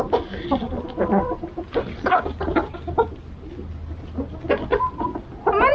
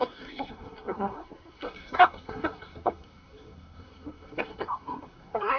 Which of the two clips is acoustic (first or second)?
first